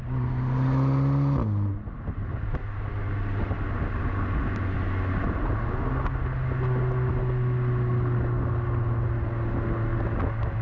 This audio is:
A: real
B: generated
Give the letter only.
A